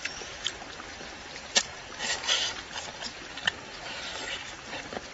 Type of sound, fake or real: fake